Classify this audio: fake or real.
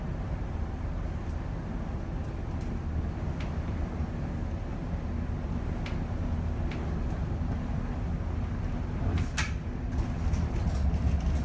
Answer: real